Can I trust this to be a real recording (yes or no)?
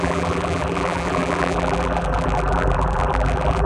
no